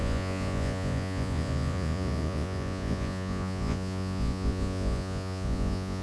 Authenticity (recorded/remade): remade